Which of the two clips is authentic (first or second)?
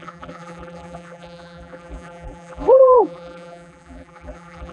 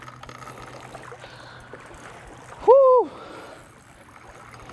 second